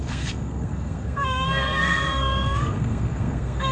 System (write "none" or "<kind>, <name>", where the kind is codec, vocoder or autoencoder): codec, SNAC